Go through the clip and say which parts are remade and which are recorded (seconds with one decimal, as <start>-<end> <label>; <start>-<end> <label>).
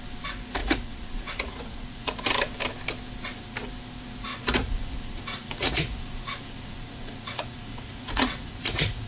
0.0-0.6 recorded; 0.6-2.1 remade; 2.1-4.3 recorded; 4.3-9.1 remade